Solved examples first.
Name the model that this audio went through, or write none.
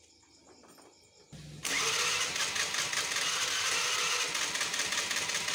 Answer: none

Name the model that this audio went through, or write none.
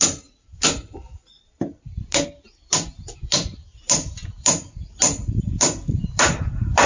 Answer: vocoder, BigVGAN v2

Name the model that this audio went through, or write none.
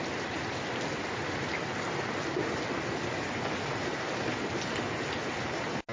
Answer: none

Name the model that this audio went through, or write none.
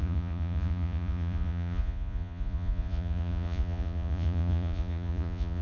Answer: vocoder, Vocos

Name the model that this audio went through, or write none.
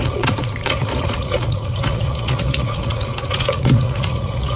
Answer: vocoder, Vocos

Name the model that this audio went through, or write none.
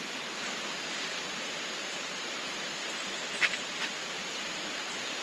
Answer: vocoder, BigVGAN v2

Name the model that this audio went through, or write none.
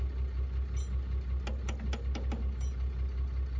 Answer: none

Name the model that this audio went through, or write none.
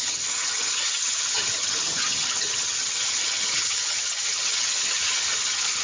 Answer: vocoder, HiFi-GAN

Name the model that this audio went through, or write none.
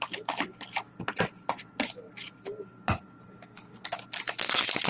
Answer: none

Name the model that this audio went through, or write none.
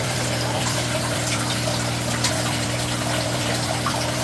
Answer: vocoder, BigVGAN v2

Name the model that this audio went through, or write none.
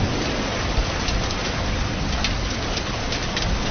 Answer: none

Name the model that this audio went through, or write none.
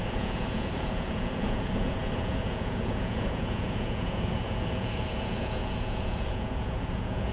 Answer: vocoder, Vocos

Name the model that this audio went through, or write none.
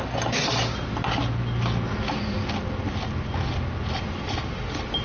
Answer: none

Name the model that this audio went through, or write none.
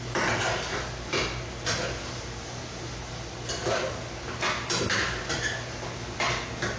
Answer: none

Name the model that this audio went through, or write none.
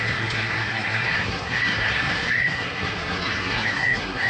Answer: codec, SNAC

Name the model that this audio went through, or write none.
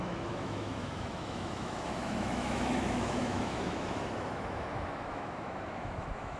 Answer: autoencoder, DAC-VAE